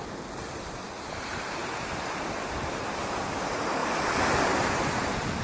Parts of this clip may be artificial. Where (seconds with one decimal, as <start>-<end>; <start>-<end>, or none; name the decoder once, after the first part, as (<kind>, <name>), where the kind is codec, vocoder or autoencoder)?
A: 0.0-5.4 (vocoder, BigVGAN v2)